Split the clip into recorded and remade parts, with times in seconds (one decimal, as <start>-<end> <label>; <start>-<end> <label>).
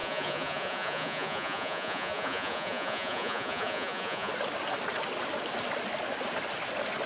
0.0-4.3 remade; 4.3-7.1 recorded